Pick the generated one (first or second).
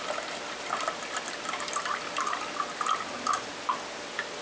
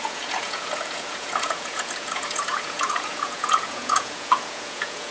second